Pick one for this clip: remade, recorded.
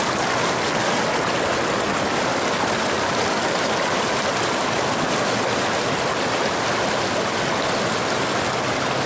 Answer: recorded